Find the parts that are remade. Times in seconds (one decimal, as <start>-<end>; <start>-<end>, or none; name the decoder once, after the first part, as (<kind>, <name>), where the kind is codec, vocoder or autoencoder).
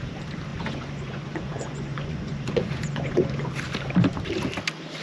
0.5-3.5 (vocoder, Vocos)